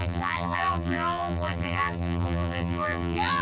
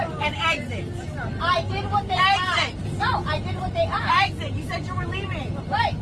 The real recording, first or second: second